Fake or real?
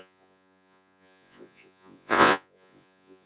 fake